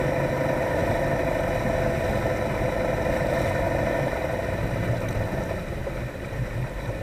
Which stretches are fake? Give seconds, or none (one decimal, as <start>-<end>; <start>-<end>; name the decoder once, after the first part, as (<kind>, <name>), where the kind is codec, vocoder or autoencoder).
none

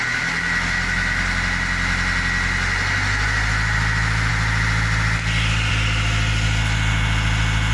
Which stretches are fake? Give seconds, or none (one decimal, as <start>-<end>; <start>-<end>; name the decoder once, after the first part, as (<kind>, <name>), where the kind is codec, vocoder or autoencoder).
none

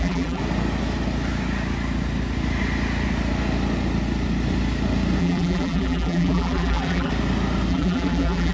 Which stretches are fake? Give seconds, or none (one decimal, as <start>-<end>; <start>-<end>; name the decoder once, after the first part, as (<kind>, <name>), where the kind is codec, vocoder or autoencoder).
0.0-0.4 (vocoder, BigVGAN v2); 5.2-7.1; 7.7-8.5

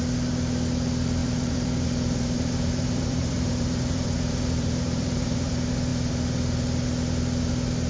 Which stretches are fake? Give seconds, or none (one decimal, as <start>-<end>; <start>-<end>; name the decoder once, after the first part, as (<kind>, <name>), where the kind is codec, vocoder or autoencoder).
1.2-5.5 (vocoder, BigVGAN v2)

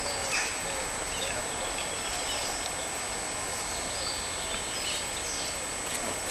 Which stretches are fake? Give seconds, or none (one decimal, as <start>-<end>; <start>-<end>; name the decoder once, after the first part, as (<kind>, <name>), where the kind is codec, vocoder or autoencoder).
none

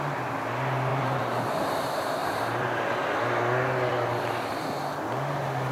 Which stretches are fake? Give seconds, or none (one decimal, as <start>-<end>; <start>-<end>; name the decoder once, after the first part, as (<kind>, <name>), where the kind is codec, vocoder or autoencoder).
0.9-1.7 (vocoder, BigVGAN v2); 2.2-2.9; 3.9-4.6